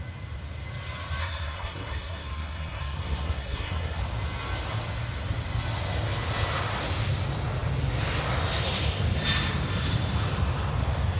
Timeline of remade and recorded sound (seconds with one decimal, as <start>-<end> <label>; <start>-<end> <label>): 0.0-1.2 recorded; 1.2-4.0 remade; 4.0-11.2 recorded